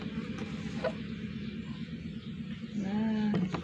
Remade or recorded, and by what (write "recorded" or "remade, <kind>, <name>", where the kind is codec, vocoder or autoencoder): recorded